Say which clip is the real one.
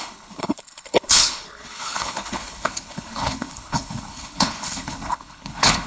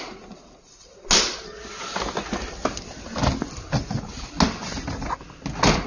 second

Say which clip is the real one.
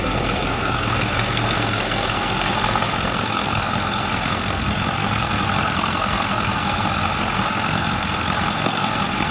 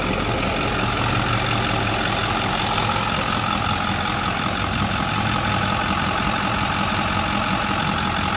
second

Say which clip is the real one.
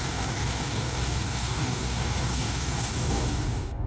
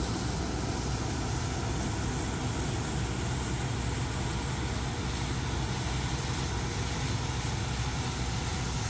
second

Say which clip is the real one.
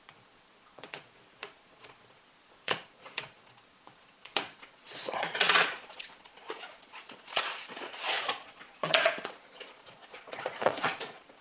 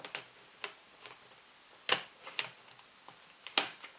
second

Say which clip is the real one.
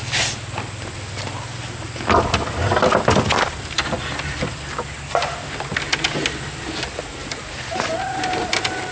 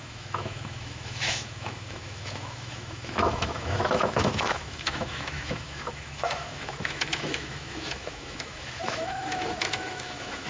first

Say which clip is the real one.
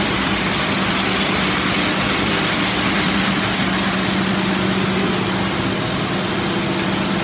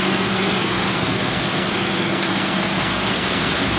first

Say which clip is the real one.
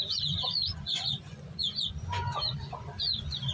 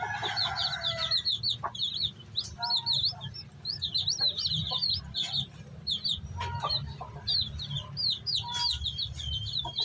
second